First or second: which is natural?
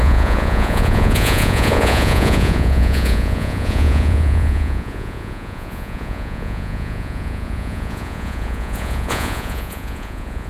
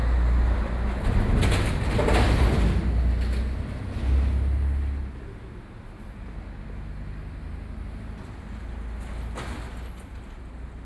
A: second